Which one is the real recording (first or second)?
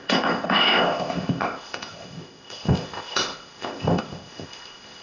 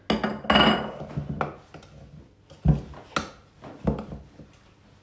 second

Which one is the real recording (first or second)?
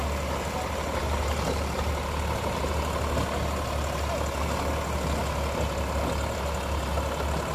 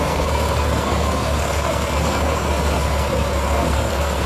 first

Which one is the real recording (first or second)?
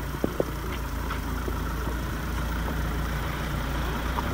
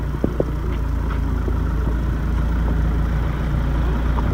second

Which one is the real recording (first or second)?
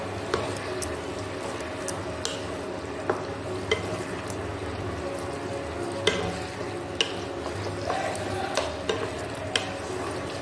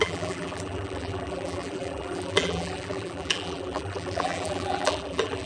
first